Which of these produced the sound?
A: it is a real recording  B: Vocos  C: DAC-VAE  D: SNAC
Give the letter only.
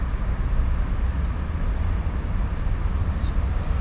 A